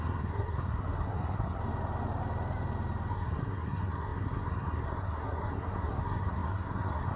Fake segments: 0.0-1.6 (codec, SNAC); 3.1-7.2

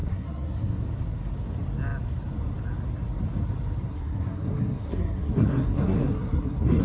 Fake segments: 0.0-0.8 (codec, SNAC); 3.9-6.8

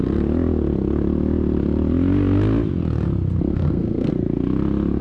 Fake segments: 3.5-4.1 (codec, SNAC)

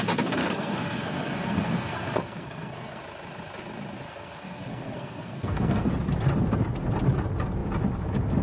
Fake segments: 0.4-3.0 (codec, SNAC); 4.1-5.9

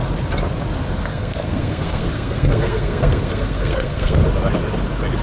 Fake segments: 1.1-4.2 (codec, SNAC)